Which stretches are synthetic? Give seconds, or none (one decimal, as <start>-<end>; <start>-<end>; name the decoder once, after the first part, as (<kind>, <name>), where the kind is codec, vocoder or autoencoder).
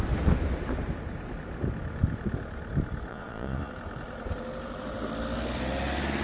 3.1-3.7 (vocoder, Vocos)